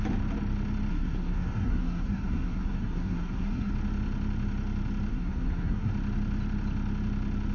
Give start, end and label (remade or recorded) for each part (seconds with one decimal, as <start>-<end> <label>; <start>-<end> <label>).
0.0-0.9 recorded; 0.9-3.7 remade; 3.7-5.1 recorded; 5.1-5.9 remade; 5.9-7.5 recorded